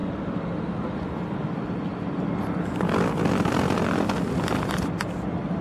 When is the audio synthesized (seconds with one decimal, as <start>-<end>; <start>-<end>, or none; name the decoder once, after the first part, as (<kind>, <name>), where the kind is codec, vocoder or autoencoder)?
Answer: none